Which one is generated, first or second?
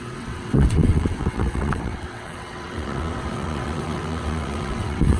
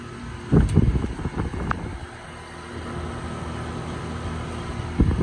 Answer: first